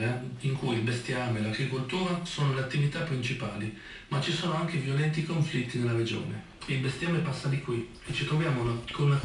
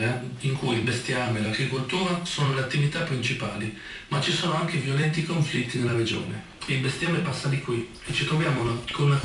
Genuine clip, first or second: first